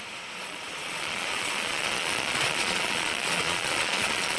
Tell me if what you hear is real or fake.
fake